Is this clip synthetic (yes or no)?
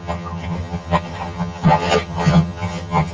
yes